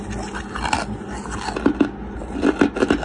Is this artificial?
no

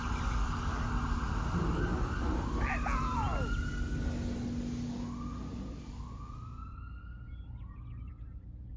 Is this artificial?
no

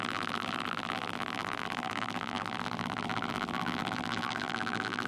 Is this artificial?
yes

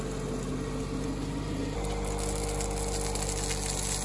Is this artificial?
no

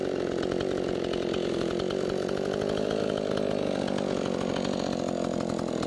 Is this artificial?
no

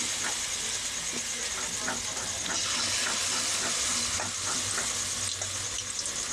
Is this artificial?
no